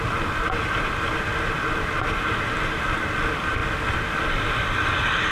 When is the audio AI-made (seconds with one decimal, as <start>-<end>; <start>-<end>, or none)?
none